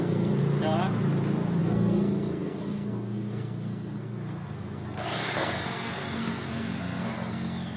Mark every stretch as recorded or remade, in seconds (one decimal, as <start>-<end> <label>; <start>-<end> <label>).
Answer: 0.0-0.4 remade; 0.4-1.6 recorded; 1.6-7.8 remade